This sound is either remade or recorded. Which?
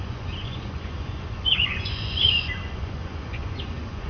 remade